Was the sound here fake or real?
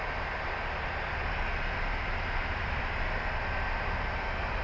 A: real